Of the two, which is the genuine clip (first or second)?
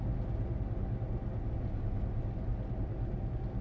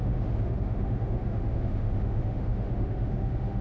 first